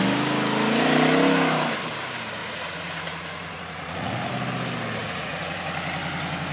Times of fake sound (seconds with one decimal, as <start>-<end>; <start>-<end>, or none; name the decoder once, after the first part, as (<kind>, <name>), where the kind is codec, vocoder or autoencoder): 2.4-4.3 (vocoder, Vocos); 5.0-5.6